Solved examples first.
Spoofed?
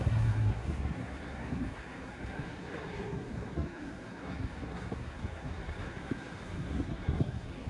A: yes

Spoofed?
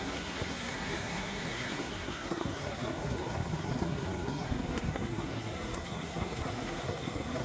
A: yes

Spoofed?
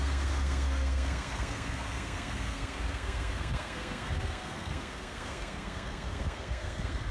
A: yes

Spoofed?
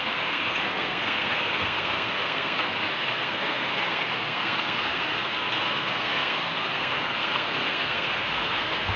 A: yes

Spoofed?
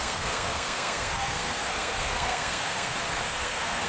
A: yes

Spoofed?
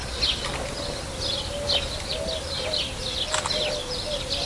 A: no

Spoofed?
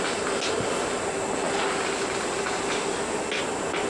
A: no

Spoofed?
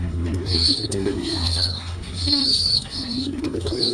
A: yes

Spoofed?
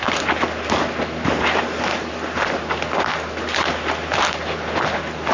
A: no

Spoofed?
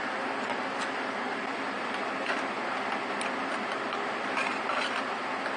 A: no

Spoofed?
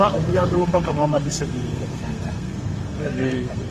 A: yes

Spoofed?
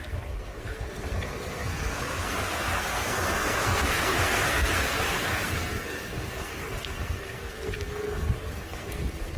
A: yes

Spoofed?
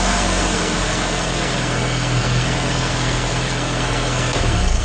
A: yes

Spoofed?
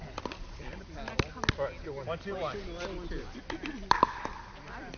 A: no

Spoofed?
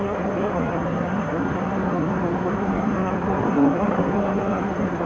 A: yes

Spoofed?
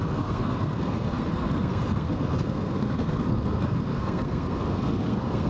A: yes